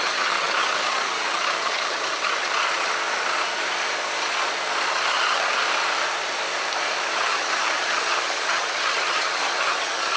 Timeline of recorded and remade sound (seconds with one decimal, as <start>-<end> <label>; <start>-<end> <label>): 0.0-2.9 remade; 2.9-4.9 recorded; 4.9-5.6 remade; 5.6-7.1 recorded; 7.1-10.2 remade